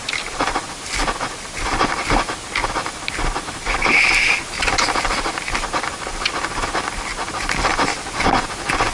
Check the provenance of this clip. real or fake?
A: real